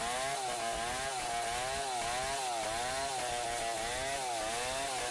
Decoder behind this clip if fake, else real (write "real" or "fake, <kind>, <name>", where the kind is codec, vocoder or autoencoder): real